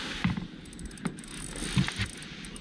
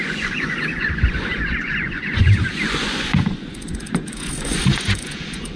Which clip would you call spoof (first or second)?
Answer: second